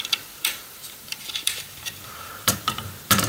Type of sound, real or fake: fake